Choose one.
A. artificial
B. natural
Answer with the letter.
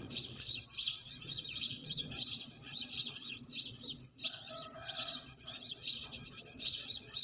A